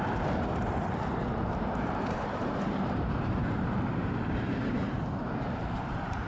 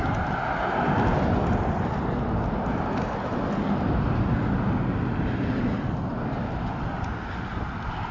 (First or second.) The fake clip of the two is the first